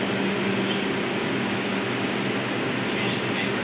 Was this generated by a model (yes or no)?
no